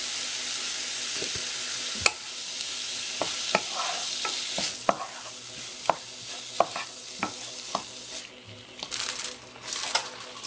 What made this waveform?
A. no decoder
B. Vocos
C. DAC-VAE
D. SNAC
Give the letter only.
A